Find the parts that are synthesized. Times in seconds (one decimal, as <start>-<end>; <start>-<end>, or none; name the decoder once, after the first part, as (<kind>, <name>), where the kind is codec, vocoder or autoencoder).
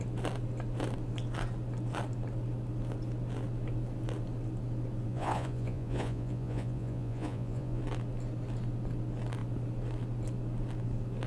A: 5.1-7.8 (vocoder, Vocos)